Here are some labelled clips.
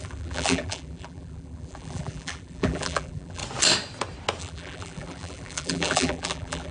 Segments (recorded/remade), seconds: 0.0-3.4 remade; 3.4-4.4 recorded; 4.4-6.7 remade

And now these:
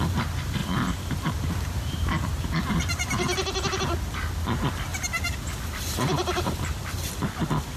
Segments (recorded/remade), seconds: 0.0-0.6 recorded; 0.6-4.2 remade; 4.2-4.9 recorded; 4.9-7.1 remade; 7.1-7.8 recorded

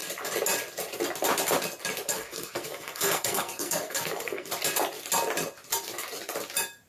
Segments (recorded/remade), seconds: 0.0-2.1 recorded; 2.1-4.5 remade; 4.5-6.9 recorded

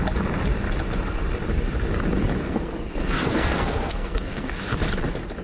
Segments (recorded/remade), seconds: 0.0-2.4 recorded; 2.4-4.5 remade; 4.5-5.4 recorded